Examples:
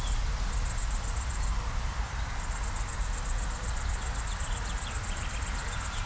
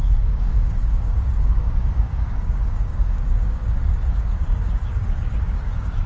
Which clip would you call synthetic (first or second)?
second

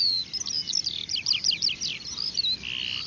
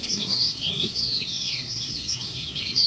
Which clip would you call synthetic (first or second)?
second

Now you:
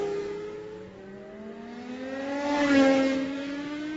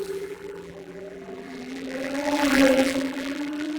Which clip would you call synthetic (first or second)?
second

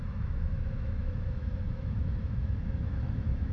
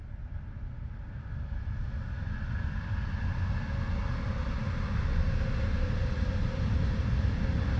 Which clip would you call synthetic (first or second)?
first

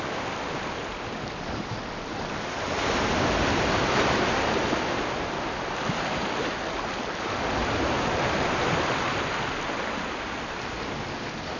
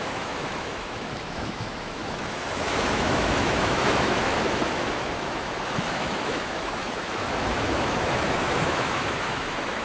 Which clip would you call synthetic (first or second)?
second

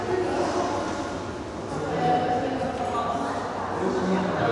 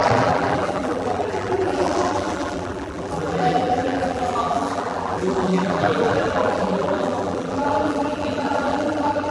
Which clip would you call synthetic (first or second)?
second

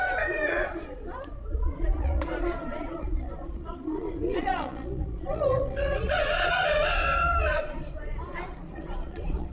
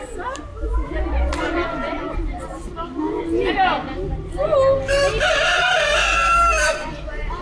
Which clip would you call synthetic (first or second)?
first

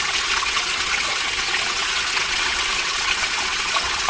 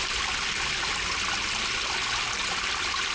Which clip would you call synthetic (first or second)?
first